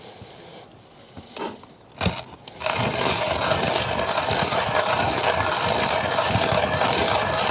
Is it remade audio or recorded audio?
recorded